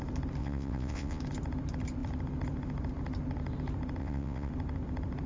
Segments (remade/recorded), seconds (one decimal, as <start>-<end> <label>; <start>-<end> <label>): 0.0-0.4 recorded; 0.4-1.2 remade; 1.2-4.0 recorded; 4.0-4.5 remade; 4.5-5.3 recorded